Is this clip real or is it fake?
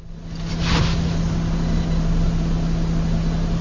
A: real